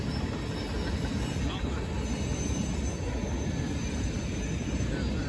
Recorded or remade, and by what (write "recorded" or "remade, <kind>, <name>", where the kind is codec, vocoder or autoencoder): recorded